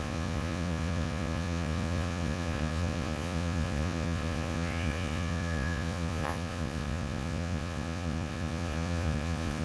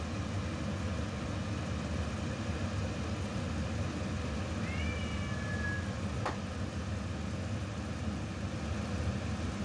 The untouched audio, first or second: second